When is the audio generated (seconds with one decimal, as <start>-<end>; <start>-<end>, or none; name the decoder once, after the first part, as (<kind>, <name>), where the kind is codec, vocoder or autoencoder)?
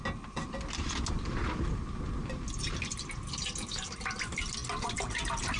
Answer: none